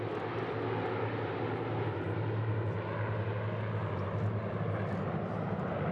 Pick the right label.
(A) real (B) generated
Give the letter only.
A